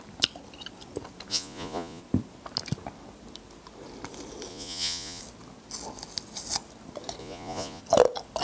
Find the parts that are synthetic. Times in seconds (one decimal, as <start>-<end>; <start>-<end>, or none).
1.3-2.0; 4.5-5.2; 7.2-7.8